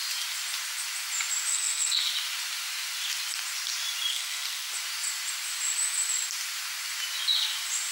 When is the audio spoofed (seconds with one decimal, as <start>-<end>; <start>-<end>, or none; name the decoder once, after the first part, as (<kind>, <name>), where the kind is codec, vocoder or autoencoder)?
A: 1.5-2.1 (codec, SNAC); 4.1-4.7